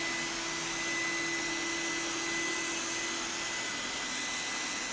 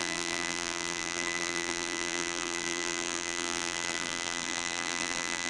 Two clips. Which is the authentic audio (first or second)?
first